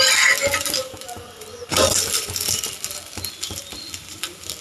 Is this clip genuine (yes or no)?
no